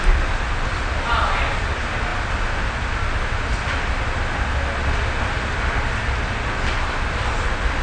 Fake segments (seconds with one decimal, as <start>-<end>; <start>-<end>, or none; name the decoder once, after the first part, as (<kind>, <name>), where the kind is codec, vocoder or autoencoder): none